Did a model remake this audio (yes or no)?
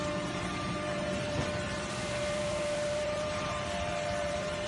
yes